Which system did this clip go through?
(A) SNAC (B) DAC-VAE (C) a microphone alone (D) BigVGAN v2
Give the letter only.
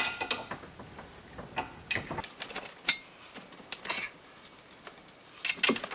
C